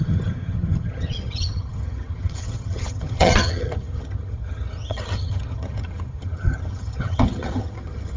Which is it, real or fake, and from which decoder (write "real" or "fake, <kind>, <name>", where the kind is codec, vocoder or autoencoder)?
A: fake, vocoder, HiFi-GAN